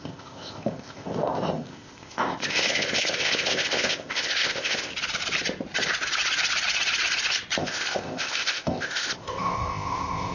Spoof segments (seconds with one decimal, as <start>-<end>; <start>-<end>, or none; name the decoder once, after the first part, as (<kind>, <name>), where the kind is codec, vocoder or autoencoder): 0.0-4.9 (codec, ZipCodec); 7.6-10.3